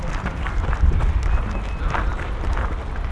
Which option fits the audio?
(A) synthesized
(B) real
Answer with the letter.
B